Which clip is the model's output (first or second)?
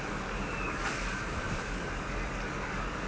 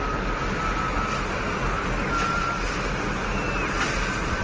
first